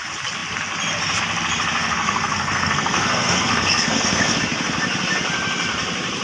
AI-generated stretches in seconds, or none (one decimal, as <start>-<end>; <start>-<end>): 1.8-4.4